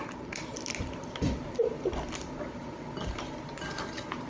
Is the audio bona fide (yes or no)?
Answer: yes